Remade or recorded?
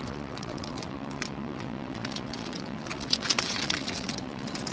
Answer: remade